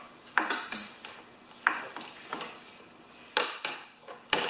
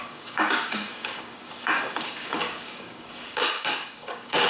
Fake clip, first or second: second